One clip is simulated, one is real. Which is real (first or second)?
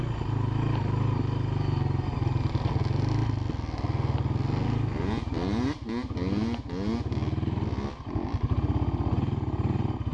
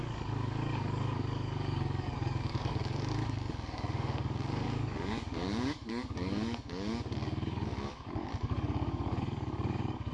first